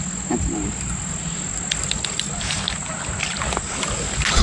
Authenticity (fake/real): real